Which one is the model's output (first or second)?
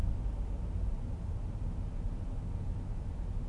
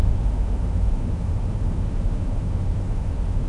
second